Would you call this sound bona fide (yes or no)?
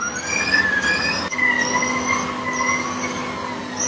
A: yes